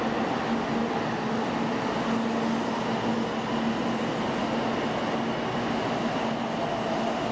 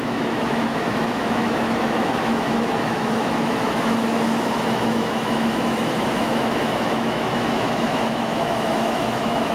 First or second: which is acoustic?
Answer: first